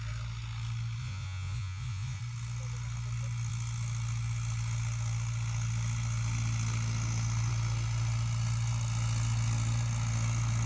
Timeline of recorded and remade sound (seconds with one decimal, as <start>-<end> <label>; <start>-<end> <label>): 0.0-1.0 recorded; 1.0-2.2 remade; 2.2-10.7 recorded